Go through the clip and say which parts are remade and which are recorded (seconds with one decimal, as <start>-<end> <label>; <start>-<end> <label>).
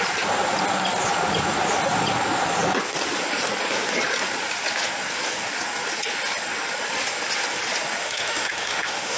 0.0-8.0 recorded; 8.0-9.2 remade